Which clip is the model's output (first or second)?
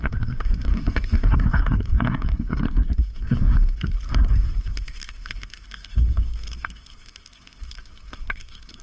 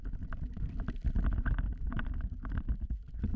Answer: first